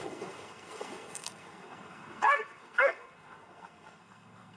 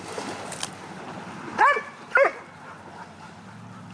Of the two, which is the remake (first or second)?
first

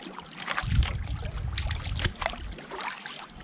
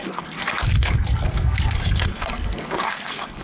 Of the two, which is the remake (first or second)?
second